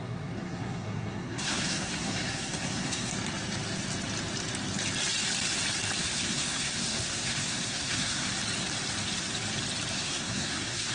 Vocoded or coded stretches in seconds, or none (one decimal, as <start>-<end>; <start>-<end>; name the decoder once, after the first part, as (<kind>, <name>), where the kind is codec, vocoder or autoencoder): 0.0-3.1 (codec, SNAC); 6.0-8.3; 9.9-10.9